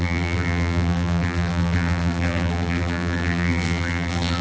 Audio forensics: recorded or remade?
remade